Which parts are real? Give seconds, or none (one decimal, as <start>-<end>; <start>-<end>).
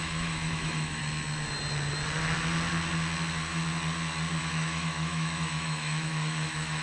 1.0-4.4